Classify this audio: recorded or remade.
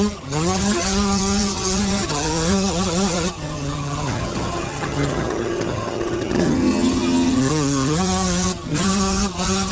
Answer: remade